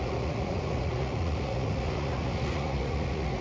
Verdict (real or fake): fake